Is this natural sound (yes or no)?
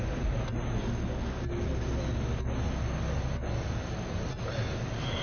yes